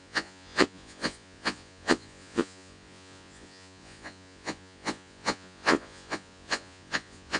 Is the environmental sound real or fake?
fake